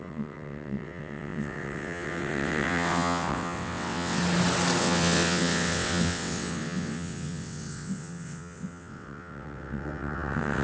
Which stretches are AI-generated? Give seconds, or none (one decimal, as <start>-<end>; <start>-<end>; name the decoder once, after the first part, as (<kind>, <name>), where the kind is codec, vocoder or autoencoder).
0.0-4.2 (vocoder, WaveNeXt); 4.8-10.6